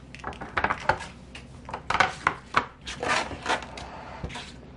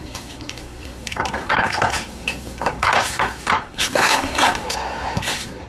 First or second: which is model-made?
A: second